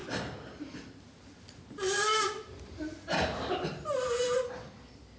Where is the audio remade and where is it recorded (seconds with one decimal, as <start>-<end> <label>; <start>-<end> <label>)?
0.0-2.1 recorded; 2.1-4.7 remade; 4.7-5.2 recorded